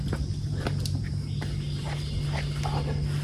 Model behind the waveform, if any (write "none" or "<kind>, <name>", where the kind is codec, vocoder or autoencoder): none